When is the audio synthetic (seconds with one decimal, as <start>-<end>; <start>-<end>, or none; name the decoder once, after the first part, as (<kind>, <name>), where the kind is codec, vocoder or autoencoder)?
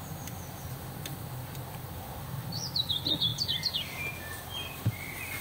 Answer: none